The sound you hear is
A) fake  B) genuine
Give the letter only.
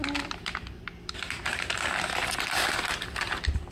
B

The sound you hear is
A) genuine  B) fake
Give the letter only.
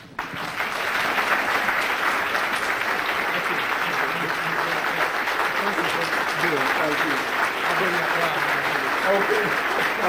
A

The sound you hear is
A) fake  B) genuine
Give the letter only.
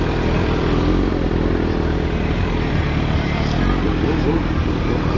A